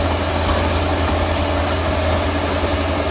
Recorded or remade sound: recorded